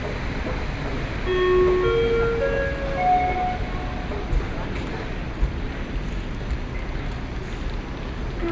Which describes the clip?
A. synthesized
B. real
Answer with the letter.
B